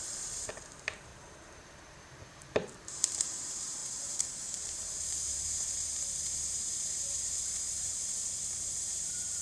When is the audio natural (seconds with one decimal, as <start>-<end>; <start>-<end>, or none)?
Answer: 1.1-1.7